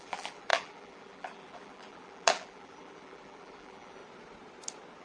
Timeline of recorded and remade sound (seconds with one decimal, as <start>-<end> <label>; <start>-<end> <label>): 0.0-4.0 remade; 4.0-5.0 recorded

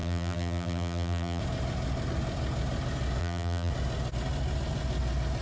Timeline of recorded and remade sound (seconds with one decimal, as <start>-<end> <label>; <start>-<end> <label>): 0.0-1.4 remade; 1.4-3.2 recorded; 3.2-3.7 remade; 3.7-5.4 recorded